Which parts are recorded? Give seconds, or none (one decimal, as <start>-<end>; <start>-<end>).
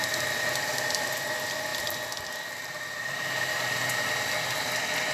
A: 0.0-5.1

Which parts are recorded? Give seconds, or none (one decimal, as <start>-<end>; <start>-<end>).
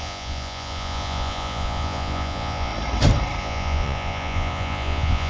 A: 2.7-3.4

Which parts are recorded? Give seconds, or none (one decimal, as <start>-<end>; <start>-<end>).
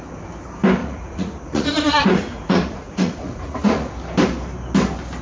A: 0.0-0.8; 3.9-5.2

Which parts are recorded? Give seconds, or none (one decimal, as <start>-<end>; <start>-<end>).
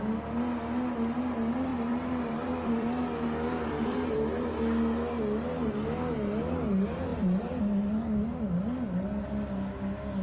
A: 0.0-1.7; 4.5-7.1; 7.6-10.2